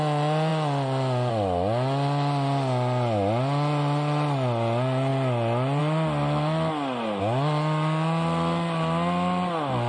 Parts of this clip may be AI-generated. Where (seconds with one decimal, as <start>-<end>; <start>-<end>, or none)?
none